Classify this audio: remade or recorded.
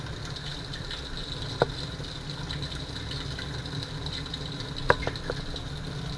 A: recorded